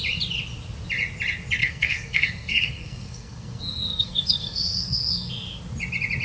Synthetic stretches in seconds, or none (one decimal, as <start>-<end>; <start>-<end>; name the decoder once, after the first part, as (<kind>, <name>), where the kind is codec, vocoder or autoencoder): 1.6-5.3 (codec, SNAC)